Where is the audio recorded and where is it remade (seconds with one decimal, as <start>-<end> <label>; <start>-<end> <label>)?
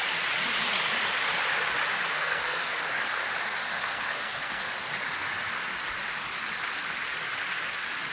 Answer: 0.0-1.9 recorded; 1.9-2.8 remade; 2.8-3.6 recorded; 3.6-4.6 remade; 4.6-8.1 recorded